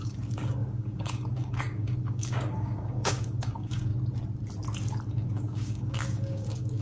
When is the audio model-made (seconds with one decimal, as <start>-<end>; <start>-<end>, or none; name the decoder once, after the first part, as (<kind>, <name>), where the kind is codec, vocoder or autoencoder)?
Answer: 0.0-3.9 (codec, DAC); 5.1-6.8